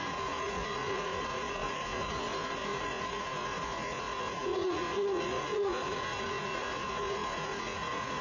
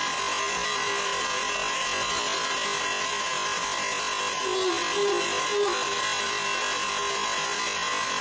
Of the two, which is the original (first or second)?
second